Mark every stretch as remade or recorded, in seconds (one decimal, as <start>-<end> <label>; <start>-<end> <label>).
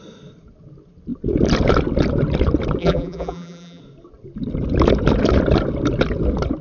0.0-2.8 recorded; 2.8-3.8 remade; 3.8-6.6 recorded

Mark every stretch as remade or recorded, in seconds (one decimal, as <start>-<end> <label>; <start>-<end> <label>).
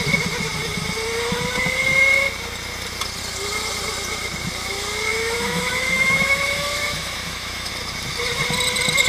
0.0-5.1 recorded; 5.1-7.7 remade; 7.7-9.1 recorded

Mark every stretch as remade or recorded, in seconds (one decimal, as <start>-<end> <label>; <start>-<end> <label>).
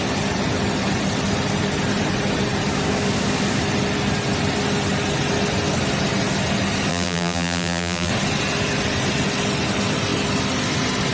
0.0-6.9 recorded; 6.9-8.1 remade; 8.1-11.1 recorded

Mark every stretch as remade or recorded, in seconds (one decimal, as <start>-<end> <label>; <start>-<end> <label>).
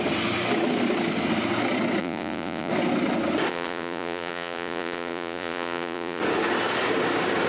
0.0-2.0 recorded; 2.0-2.7 remade; 2.7-3.5 recorded; 3.5-6.2 remade; 6.2-7.5 recorded